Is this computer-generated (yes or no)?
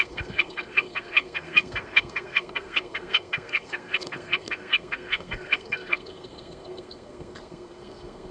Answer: yes